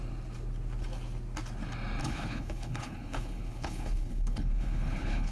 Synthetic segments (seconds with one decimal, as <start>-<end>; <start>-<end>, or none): 2.0-5.3